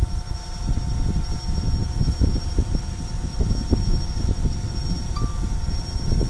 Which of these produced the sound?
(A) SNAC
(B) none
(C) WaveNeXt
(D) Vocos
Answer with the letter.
B